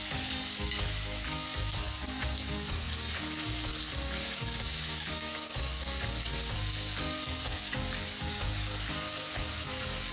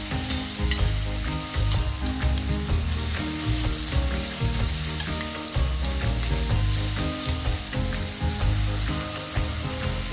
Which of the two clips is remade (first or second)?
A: first